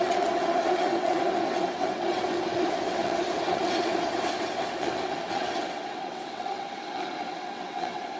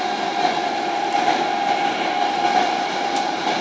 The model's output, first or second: first